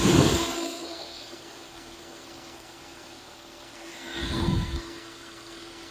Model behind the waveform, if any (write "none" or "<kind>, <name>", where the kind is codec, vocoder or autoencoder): codec, SNAC